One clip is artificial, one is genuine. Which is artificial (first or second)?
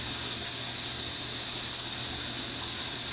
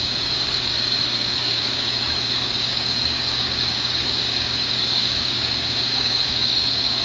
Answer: second